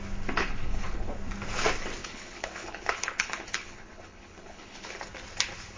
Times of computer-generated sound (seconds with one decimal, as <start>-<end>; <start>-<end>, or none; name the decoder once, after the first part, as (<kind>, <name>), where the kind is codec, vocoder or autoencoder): 0.4-1.1 (codec, HILCodec); 2.0-5.0

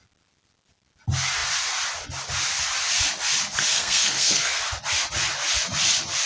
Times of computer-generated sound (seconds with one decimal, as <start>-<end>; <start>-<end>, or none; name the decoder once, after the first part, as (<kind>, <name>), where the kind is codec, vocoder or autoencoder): 3.7-4.6 (codec, SNAC)

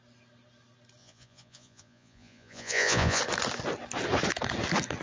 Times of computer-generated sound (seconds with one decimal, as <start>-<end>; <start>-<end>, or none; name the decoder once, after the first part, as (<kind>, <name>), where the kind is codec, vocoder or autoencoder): 1.0-3.2 (vocoder, Vocos)

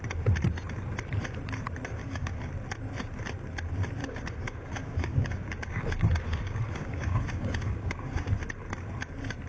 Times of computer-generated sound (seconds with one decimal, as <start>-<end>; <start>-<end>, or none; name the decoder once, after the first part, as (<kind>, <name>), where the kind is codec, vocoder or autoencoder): 2.0-2.5 (codec, DAC); 4.0-8.3

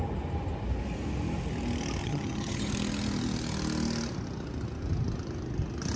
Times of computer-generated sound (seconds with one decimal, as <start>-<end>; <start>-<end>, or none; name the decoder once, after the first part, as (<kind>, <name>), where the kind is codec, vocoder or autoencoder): 2.0-2.7 (vocoder, HiFi-GAN)

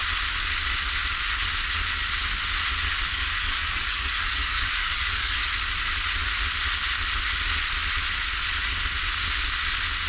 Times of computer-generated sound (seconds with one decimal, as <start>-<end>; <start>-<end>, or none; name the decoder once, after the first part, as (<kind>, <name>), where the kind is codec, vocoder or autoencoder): 3.1-5.4 (codec, DAC)

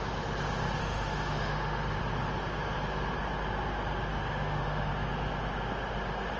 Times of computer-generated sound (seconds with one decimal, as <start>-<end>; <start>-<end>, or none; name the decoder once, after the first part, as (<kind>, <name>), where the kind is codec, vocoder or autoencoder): 0.8-2.0 (autoencoder, DAC-VAE); 4.1-4.9